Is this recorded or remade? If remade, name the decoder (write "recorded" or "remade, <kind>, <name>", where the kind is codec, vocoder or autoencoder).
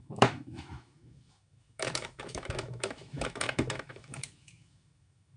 remade, autoencoder, DAC-VAE